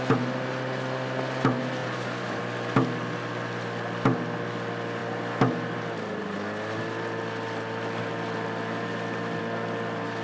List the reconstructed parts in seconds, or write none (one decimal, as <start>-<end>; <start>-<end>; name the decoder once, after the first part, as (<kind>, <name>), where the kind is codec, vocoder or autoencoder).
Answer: 1.8-2.4 (vocoder, BigVGAN v2)